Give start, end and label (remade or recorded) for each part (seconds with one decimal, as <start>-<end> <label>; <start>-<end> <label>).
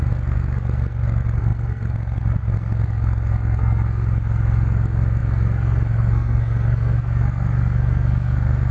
0.0-8.7 remade